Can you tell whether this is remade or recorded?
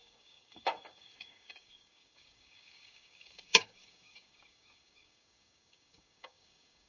remade